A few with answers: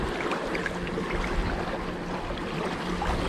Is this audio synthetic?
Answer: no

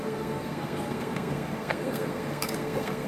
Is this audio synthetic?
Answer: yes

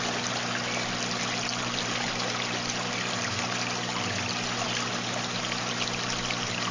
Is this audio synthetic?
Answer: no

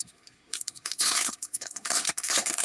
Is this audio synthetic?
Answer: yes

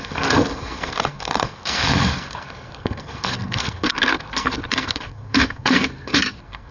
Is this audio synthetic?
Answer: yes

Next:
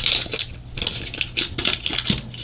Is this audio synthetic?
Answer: no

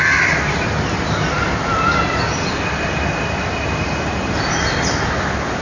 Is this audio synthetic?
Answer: no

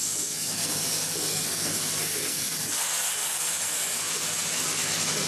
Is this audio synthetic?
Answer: yes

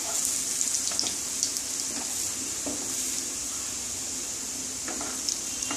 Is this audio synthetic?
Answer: no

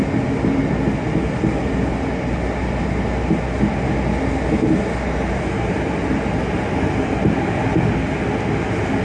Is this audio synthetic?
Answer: no